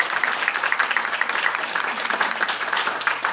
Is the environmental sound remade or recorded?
recorded